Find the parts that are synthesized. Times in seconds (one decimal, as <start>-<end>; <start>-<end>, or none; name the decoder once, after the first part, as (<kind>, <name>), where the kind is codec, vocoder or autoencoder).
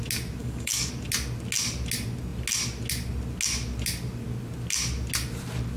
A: 0.4-0.9 (codec, DAC)